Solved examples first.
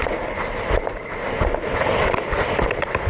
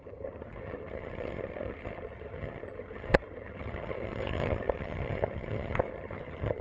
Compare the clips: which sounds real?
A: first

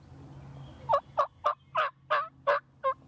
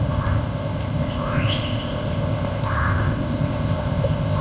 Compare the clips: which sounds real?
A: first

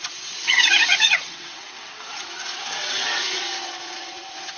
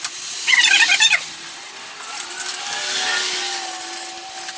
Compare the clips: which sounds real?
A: second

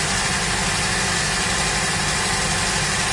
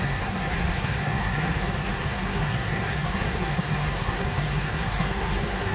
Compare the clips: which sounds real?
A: first